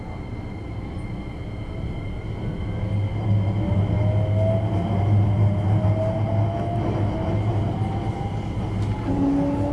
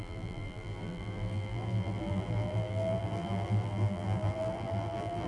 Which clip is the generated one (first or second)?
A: second